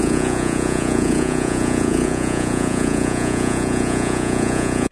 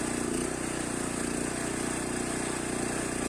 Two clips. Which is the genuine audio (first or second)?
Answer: second